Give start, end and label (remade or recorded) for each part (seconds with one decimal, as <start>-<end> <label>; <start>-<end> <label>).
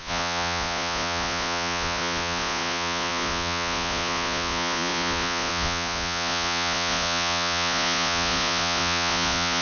0.0-9.6 remade